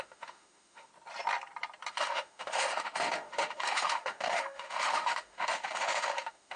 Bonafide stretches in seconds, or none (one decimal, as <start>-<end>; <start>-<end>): 0.9-1.9